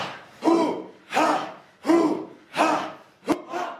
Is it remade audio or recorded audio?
recorded